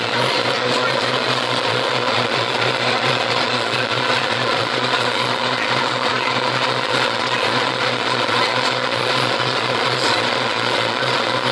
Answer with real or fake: fake